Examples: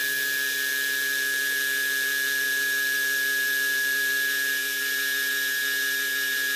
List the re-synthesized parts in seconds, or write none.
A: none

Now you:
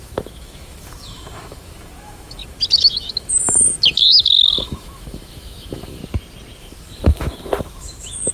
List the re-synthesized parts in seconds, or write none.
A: 0.0-6.0; 6.6-8.3

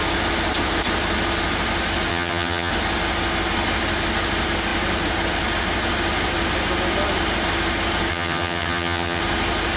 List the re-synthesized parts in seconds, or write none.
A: 2.1-2.7; 8.1-9.2

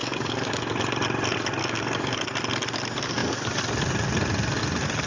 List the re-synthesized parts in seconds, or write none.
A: 0.0-0.5; 1.6-2.2

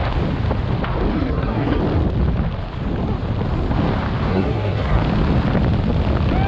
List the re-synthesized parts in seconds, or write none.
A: 1.1-1.8; 4.3-5.0

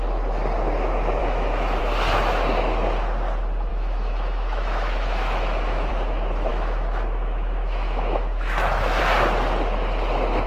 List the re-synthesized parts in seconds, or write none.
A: 1.2-1.8; 3.7-5.9; 6.5-9.0